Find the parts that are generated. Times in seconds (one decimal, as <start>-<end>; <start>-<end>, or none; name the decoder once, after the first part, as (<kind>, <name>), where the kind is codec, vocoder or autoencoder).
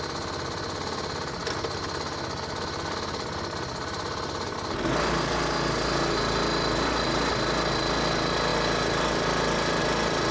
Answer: none